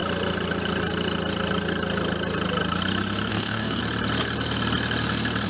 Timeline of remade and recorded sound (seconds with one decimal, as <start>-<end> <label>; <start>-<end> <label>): 0.0-3.3 recorded; 3.3-3.8 remade; 3.8-5.5 recorded